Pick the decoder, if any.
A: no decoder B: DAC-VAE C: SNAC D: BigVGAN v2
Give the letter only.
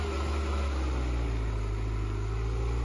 A